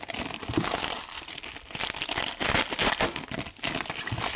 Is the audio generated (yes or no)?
no